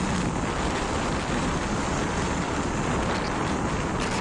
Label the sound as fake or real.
real